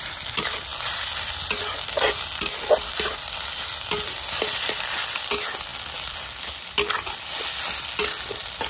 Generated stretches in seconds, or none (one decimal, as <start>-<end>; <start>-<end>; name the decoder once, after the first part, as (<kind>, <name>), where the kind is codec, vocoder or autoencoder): none